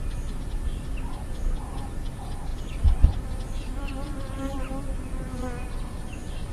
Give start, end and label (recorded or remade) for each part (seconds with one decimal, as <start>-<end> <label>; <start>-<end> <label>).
0.0-2.5 recorded; 2.5-4.2 remade; 4.2-6.5 recorded